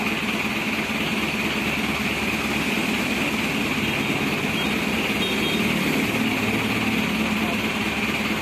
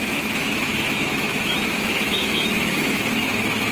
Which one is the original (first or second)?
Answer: first